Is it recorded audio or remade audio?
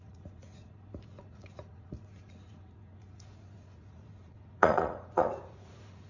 remade